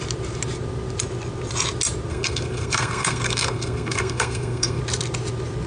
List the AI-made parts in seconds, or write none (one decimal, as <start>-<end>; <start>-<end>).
2.1-4.8